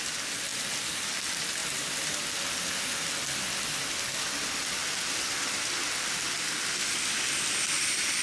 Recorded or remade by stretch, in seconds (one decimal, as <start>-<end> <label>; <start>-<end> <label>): 0.0-1.6 recorded; 1.6-2.7 remade; 2.7-4.8 recorded; 4.8-6.3 remade; 6.3-8.2 recorded